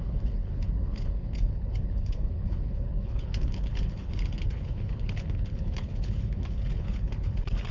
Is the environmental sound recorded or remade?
remade